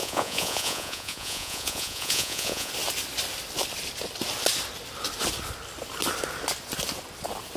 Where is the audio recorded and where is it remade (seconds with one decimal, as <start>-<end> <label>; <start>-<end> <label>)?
0.0-2.7 remade; 2.7-7.6 recorded